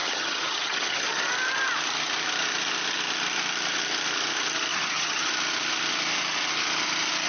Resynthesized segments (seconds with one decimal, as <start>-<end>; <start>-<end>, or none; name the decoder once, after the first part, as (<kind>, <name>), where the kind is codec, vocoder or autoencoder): 0.0-1.3 (vocoder, HiFi-GAN); 4.7-5.3